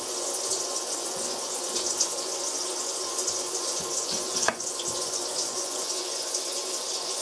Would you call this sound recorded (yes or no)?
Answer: no